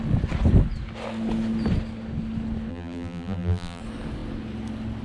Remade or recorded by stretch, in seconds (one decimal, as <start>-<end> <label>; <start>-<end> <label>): 0.0-2.7 recorded; 2.7-3.8 remade; 3.8-5.0 recorded